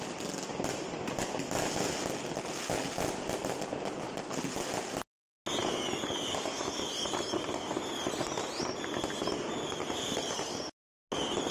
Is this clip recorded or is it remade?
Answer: recorded